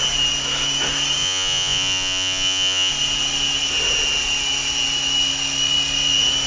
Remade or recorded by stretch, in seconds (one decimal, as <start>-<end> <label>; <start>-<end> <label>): 0.0-1.2 recorded; 1.2-2.9 remade; 2.9-6.5 recorded